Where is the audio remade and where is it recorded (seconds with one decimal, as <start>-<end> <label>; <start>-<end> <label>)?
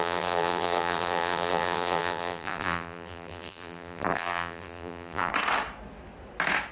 0.0-5.3 remade; 5.3-6.7 recorded